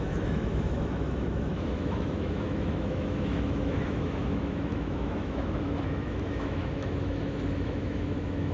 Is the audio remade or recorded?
remade